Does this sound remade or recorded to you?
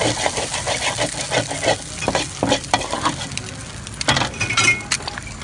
recorded